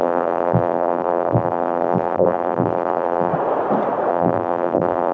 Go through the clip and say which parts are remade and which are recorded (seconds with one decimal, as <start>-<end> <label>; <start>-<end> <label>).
0.0-3.3 remade; 3.3-4.1 recorded; 4.1-5.1 remade